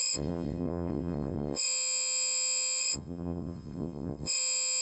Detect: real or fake fake